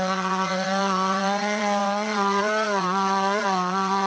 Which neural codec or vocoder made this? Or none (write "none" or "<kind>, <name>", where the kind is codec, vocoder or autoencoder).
vocoder, Vocos